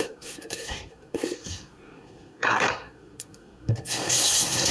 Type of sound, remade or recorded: remade